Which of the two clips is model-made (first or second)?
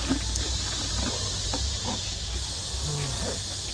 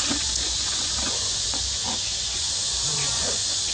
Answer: second